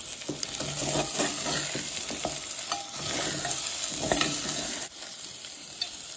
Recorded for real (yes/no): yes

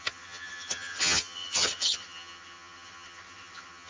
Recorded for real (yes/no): no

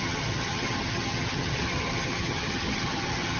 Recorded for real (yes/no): no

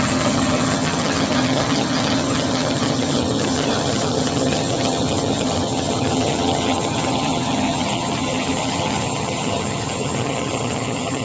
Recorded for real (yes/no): no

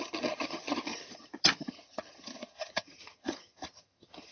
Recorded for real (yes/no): no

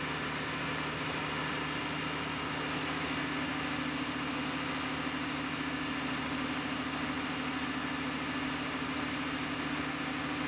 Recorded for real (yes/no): yes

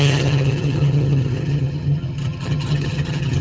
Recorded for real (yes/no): no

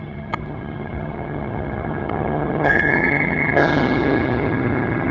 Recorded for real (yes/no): no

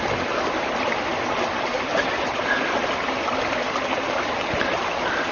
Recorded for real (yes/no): yes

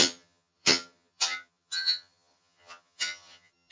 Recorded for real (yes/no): no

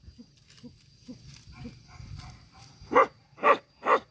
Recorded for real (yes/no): yes